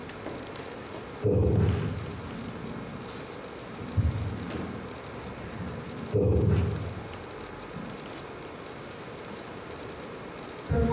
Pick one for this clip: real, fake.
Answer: real